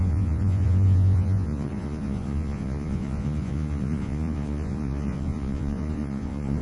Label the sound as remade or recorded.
remade